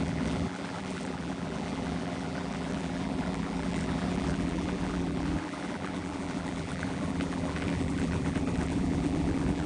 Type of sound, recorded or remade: remade